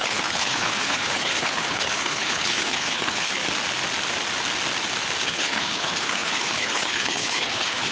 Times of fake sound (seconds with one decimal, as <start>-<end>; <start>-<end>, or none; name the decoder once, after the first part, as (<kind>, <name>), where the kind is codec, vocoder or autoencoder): 0.0-3.4 (codec, HILCodec); 5.2-7.9